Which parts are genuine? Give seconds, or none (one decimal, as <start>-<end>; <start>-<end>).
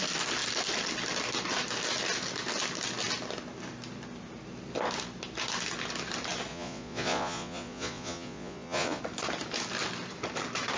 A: 0.0-6.5; 9.0-10.8